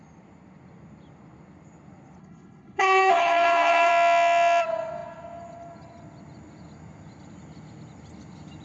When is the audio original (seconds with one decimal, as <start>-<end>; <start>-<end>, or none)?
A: 0.0-2.2; 3.9-8.6